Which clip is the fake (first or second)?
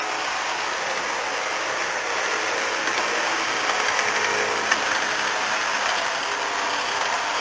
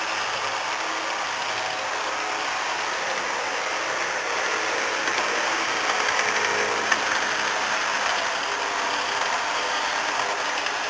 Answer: second